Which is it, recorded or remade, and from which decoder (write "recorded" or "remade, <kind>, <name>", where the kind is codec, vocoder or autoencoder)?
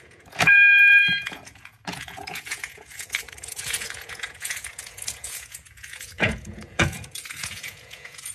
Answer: remade, vocoder, Vocos